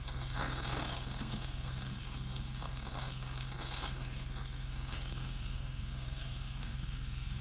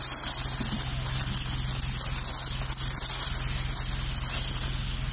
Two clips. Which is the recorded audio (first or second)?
second